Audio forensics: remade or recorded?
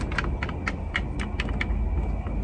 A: recorded